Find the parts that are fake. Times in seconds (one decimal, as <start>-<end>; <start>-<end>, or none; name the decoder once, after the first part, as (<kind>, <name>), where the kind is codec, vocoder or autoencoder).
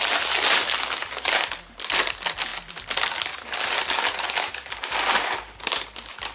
none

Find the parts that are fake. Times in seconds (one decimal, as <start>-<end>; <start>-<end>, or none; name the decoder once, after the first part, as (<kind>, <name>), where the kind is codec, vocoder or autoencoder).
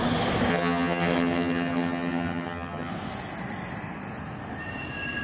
0.5-2.9 (vocoder, HiFi-GAN)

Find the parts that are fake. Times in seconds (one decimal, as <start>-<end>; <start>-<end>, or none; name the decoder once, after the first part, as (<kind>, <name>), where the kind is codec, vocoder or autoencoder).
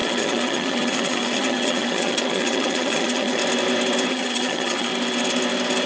0.0-3.4 (vocoder, HiFi-GAN); 4.1-4.9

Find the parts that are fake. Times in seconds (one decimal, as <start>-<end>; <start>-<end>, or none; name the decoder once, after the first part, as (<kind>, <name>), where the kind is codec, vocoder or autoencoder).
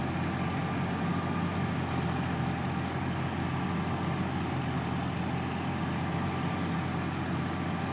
none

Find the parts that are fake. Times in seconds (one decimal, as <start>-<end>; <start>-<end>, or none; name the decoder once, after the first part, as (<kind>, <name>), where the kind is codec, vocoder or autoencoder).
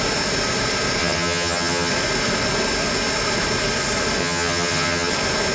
1.0-1.9 (vocoder, HiFi-GAN); 4.2-5.1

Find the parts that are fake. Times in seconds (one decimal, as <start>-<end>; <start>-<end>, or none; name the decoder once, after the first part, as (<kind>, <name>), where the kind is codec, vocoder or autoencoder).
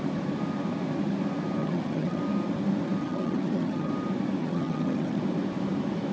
1.6-2.2 (vocoder, HiFi-GAN); 3.0-3.9; 4.4-5.2